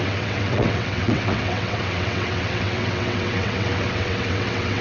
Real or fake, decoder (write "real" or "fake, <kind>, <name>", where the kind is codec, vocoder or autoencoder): fake, vocoder, WaveNeXt